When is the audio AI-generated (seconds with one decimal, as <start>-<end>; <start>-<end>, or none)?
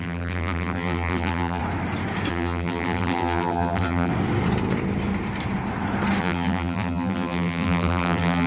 0.0-1.6; 2.3-4.1; 6.2-8.5